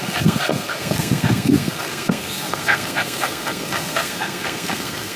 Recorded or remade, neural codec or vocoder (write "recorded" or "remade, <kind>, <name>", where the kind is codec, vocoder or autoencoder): remade, codec, SNAC